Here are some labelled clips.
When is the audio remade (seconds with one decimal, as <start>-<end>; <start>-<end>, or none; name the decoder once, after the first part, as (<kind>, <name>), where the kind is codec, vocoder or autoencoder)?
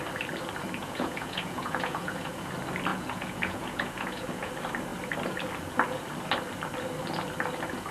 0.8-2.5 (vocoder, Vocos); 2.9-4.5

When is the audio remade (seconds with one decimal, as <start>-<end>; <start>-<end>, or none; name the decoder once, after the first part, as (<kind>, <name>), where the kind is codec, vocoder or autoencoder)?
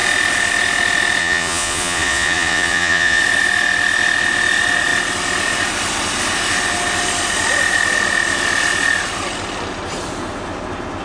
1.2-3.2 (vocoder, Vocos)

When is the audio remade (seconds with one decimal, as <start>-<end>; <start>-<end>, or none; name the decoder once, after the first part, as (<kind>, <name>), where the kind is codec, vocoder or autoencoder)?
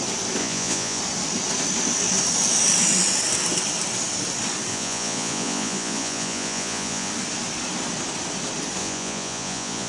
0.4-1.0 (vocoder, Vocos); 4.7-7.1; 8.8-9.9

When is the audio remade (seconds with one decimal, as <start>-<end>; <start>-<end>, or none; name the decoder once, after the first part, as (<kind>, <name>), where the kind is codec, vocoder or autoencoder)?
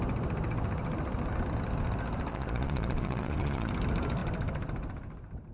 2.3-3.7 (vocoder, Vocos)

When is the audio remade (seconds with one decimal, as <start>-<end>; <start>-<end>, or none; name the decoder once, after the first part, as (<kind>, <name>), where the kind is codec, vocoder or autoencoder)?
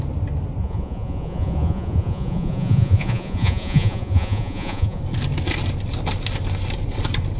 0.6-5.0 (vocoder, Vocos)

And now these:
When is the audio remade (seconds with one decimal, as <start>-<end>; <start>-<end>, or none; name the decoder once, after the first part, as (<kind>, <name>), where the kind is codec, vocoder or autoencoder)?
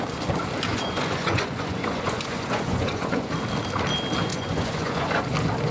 0.7-3.3 (vocoder, Vocos); 4.3-5.2